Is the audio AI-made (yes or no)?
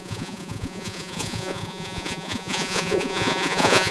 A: yes